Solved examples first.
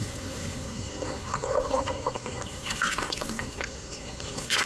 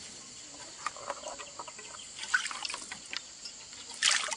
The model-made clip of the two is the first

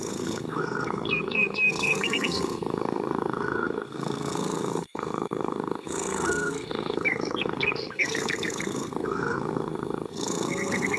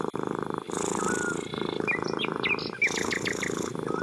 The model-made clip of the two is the first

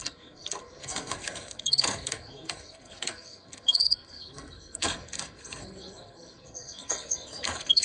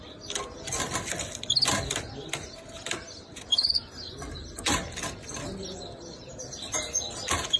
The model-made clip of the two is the first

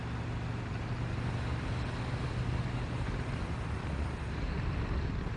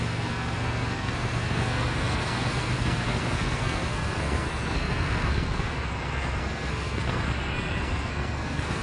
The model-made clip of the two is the second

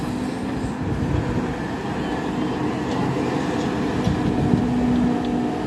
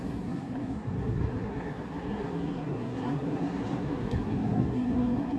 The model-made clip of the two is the second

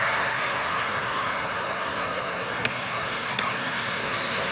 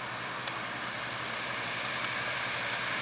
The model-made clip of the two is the first